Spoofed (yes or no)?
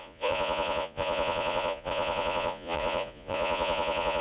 yes